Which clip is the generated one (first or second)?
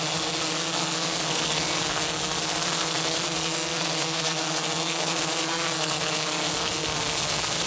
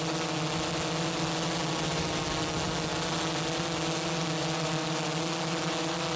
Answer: first